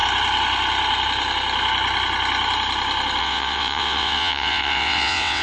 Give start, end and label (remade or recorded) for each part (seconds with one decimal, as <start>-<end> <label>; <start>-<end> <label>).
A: 0.0-3.2 recorded; 3.2-5.4 remade